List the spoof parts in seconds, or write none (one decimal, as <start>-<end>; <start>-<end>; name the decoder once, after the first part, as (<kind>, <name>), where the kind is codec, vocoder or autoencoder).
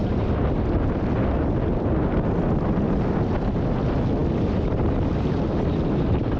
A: none